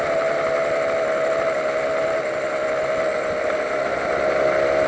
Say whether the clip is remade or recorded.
recorded